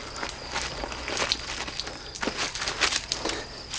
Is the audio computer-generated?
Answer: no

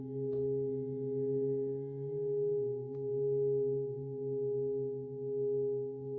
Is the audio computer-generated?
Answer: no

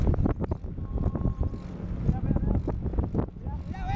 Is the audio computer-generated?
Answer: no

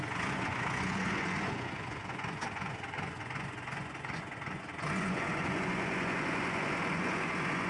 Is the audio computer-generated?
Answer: yes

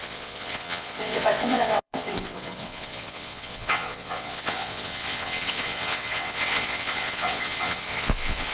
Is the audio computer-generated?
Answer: yes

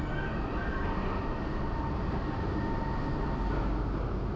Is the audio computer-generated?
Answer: no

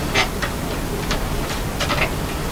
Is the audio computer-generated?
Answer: no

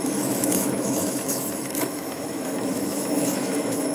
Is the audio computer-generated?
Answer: yes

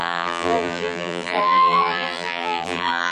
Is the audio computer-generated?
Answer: yes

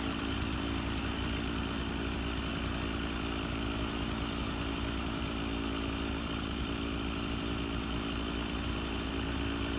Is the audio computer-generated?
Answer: no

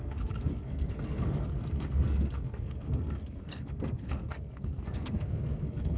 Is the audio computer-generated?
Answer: yes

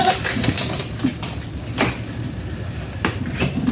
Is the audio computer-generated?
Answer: no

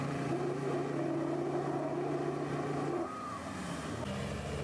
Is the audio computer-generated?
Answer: no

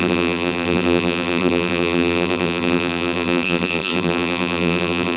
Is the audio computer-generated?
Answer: yes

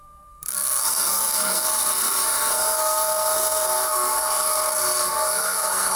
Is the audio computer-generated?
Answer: yes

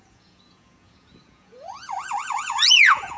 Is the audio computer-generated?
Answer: yes